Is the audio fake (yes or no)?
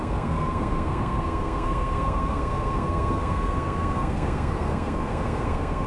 yes